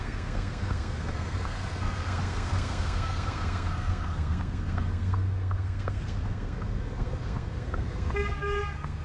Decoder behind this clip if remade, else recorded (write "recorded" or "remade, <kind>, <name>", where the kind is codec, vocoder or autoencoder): remade, codec, SNAC